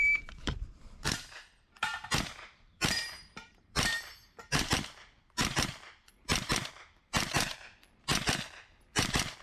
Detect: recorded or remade remade